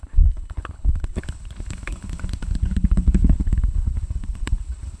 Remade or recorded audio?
remade